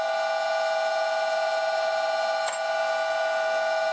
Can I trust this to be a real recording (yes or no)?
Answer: yes